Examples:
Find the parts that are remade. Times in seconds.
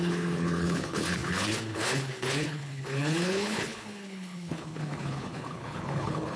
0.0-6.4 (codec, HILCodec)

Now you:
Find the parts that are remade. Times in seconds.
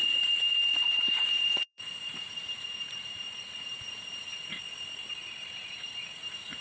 0.0-4.3 (vocoder, Vocos); 5.7-6.6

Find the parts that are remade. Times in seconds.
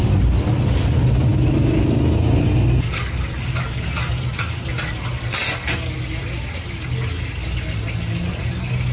none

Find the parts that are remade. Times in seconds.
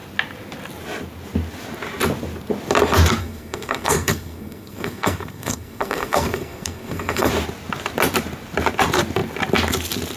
3.2-7.3 (codec, SNAC)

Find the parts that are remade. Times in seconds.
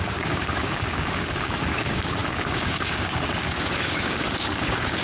0.0-5.0 (codec, DAC)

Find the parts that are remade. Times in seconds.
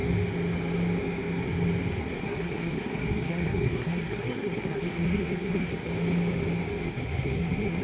2.0-5.9 (codec, SNAC); 6.8-7.8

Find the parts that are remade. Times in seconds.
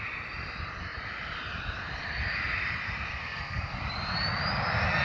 3.1-3.8 (codec, SNAC)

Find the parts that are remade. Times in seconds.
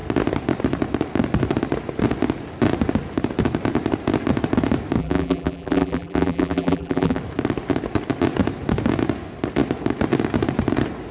5.0-7.2 (vocoder, BigVGAN v2)